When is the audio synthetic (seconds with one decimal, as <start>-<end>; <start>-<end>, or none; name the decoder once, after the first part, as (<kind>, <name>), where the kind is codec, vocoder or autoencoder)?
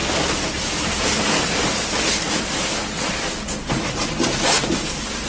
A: none